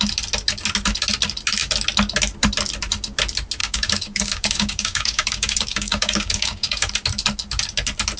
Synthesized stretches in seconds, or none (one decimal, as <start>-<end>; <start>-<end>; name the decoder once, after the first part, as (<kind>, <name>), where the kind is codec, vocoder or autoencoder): 3.6-6.9 (codec, DAC)